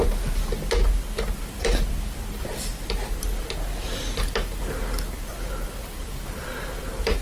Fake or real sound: real